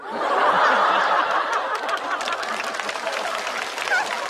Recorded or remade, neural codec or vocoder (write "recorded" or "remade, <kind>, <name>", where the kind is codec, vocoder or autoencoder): recorded